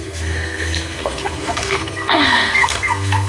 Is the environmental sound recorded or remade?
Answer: remade